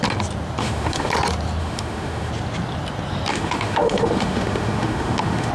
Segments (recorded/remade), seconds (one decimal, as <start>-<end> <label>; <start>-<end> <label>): 0.0-0.6 recorded; 0.6-1.1 remade; 1.1-1.6 recorded; 1.6-2.3 remade; 2.3-3.3 recorded; 3.3-5.5 remade